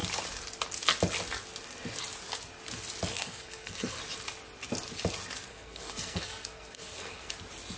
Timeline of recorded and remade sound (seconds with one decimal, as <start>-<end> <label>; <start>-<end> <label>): 0.0-3.1 recorded; 3.1-4.0 remade; 4.0-5.5 recorded; 5.5-7.3 remade; 7.3-7.8 recorded